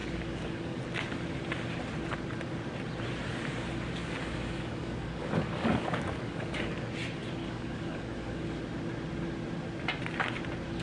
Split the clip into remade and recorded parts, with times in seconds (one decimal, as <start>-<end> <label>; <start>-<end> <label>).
0.0-0.8 remade; 0.8-4.0 recorded; 4.0-6.9 remade; 6.9-7.4 recorded; 7.4-8.6 remade; 8.6-10.8 recorded

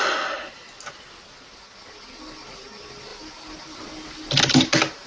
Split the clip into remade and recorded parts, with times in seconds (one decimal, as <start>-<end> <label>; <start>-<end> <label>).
0.0-5.1 recorded

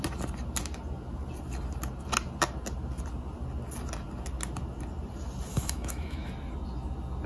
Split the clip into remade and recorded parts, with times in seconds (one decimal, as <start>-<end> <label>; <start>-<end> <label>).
0.0-5.5 recorded; 5.5-6.3 remade; 6.3-7.3 recorded

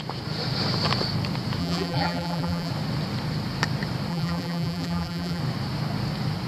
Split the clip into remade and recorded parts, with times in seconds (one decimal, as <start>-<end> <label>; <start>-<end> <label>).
0.0-1.6 recorded; 1.6-2.7 remade; 2.7-4.1 recorded; 4.1-5.4 remade; 5.4-6.5 recorded

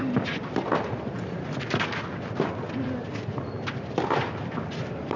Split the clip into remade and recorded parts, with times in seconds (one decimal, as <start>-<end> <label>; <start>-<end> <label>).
0.0-5.2 recorded

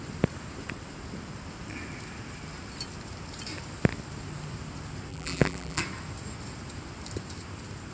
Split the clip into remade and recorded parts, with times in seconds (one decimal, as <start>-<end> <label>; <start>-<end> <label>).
0.0-5.1 recorded; 5.1-5.8 remade; 5.8-7.9 recorded

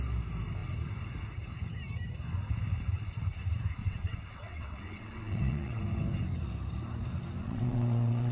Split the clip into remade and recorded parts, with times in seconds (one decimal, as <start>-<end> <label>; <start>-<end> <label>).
0.0-3.8 recorded; 3.8-5.8 remade; 5.8-7.4 recorded; 7.4-8.3 remade